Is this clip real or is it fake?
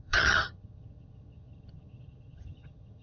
fake